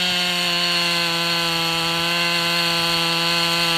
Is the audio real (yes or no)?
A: yes